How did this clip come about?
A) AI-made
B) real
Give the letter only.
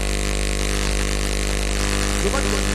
B